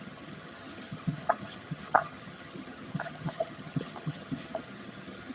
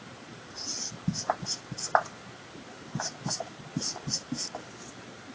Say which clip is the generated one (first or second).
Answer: first